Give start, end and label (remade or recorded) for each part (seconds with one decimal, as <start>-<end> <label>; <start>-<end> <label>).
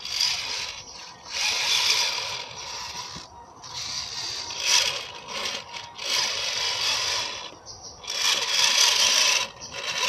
0.0-10.1 recorded